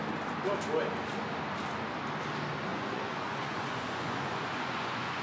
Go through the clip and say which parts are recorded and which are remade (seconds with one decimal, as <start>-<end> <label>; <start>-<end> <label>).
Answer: 0.0-2.7 recorded; 2.7-5.2 remade